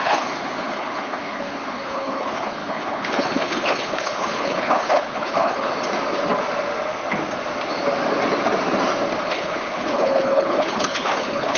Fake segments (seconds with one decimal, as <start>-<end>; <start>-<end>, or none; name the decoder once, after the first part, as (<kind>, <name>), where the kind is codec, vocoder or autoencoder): 0.0-5.7 (codec, HILCodec); 9.2-11.6